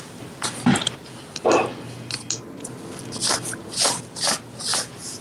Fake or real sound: real